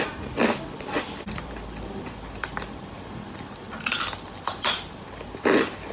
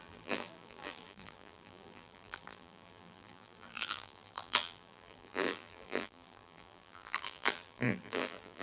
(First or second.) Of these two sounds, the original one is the first